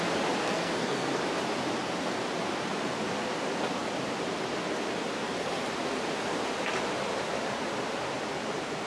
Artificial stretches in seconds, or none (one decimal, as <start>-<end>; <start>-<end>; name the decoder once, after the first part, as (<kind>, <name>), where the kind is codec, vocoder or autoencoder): 0.4-1.2 (codec, SNAC)